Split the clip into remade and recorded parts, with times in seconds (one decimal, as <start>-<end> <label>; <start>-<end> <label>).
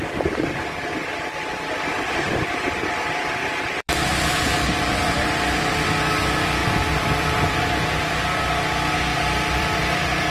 0.0-3.4 recorded; 3.4-6.1 remade; 6.1-6.6 recorded; 6.6-8.0 remade; 8.0-9.1 recorded; 9.1-9.8 remade; 9.8-10.3 recorded